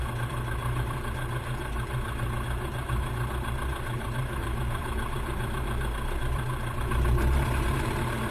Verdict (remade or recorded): remade